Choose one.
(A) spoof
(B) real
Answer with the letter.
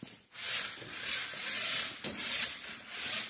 B